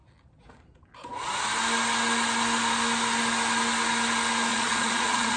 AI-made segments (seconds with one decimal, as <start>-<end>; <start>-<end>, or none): 4.5-5.4